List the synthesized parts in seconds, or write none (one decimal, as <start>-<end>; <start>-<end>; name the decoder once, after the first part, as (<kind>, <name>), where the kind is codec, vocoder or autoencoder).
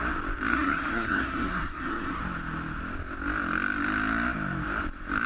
0.5-2.2 (codec, SNAC)